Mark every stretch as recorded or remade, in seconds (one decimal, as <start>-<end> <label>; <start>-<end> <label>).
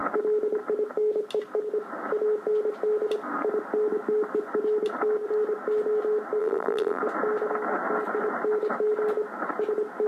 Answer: 0.0-6.4 recorded; 6.4-7.0 remade; 7.0-10.1 recorded